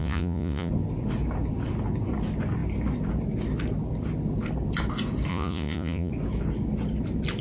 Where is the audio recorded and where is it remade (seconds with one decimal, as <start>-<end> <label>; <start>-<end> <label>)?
0.0-0.7 remade; 0.7-5.3 recorded; 5.3-6.1 remade; 6.1-7.4 recorded